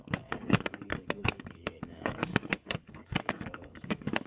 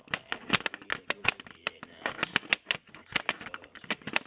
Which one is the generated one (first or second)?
first